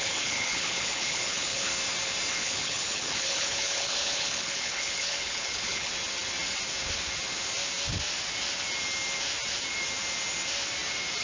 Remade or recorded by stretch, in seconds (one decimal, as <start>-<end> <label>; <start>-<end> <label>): 0.0-1.7 remade; 1.7-2.3 recorded; 2.3-5.9 remade; 5.9-11.2 recorded